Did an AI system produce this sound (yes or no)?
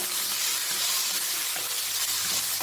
no